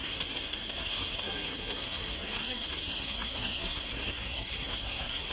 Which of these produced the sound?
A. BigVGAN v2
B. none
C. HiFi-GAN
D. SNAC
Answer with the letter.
D